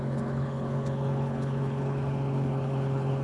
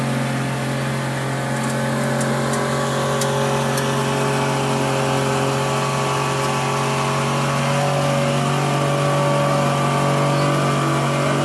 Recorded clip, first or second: second